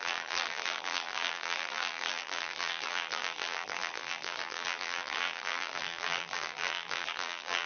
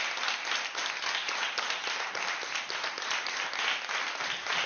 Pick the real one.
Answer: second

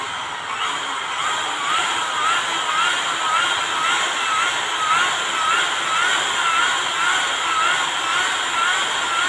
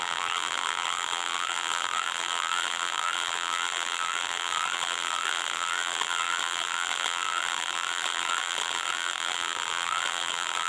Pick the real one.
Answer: first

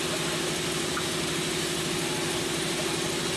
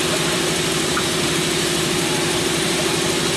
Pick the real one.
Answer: first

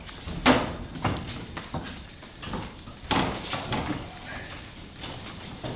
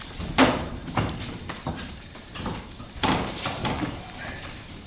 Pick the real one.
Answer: first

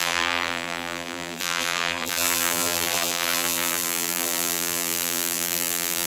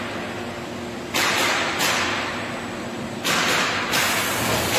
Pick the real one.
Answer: second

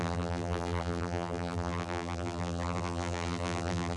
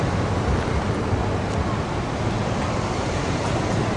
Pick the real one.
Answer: second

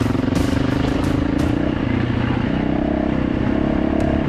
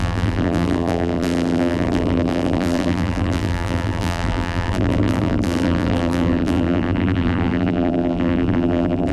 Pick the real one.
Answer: first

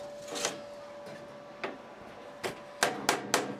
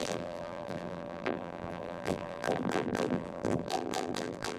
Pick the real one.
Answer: first